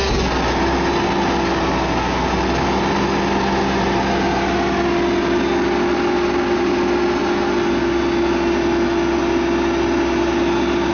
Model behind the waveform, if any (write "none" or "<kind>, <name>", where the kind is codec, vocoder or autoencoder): none